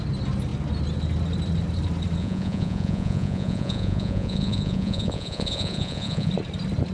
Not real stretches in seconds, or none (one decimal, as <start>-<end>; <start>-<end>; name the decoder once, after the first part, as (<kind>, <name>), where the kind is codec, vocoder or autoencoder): 2.2-6.3 (vocoder, Vocos)